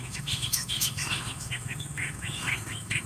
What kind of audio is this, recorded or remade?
remade